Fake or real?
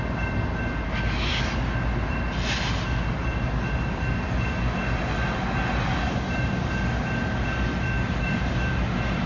real